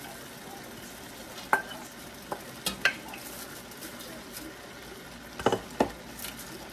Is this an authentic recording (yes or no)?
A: yes